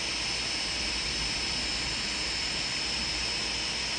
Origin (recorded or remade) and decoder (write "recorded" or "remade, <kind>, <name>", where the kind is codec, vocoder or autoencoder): recorded